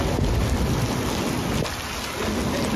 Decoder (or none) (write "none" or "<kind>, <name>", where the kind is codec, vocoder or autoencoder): none